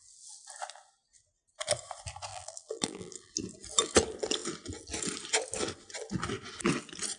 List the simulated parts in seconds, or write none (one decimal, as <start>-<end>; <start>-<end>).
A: 2.3-3.3